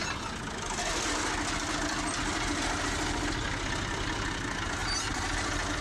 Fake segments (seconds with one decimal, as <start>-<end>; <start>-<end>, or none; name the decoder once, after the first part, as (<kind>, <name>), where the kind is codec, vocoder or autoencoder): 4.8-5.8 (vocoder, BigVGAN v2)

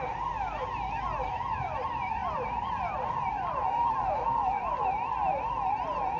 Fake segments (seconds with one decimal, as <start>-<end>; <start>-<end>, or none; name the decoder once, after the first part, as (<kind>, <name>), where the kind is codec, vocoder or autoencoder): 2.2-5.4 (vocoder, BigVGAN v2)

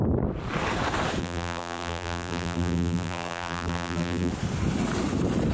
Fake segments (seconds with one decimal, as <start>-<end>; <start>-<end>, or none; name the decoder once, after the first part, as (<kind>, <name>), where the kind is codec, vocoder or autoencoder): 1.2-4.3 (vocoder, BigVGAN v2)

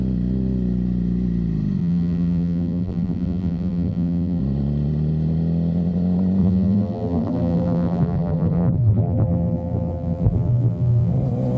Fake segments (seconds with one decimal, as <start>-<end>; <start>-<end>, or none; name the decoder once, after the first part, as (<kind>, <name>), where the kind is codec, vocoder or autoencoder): 1.8-4.4 (vocoder, BigVGAN v2); 6.4-11.1

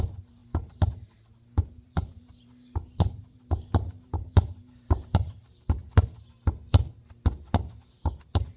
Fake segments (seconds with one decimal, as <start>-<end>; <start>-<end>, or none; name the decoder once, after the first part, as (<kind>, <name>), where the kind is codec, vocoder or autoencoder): 0.0-5.8 (vocoder, BigVGAN v2)

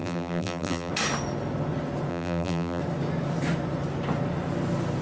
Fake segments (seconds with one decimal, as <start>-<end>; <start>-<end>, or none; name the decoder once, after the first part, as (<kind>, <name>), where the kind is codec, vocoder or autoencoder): 0.0-0.9 (vocoder, BigVGAN v2); 2.1-2.8